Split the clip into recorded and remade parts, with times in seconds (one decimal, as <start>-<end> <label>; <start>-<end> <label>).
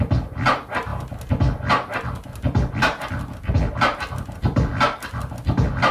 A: 0.0-5.9 recorded